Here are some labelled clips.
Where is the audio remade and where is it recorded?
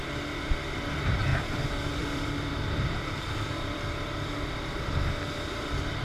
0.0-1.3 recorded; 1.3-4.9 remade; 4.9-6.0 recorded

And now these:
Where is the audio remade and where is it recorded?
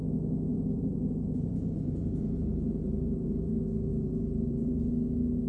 0.0-0.5 recorded; 0.5-3.5 remade; 3.5-3.9 recorded; 3.9-4.9 remade; 4.9-5.5 recorded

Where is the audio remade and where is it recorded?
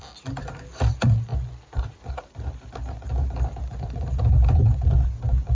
0.0-1.3 recorded; 1.3-4.6 remade; 4.6-5.5 recorded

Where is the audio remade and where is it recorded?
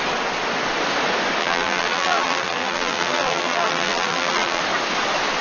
0.0-1.4 recorded; 1.4-4.6 remade; 4.6-5.4 recorded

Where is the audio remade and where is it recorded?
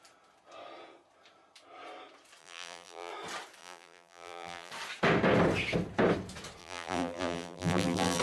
0.0-2.4 recorded; 2.4-3.1 remade; 3.1-3.6 recorded; 3.6-4.7 remade; 4.7-6.6 recorded; 6.6-8.2 remade